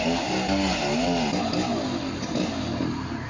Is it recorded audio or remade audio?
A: recorded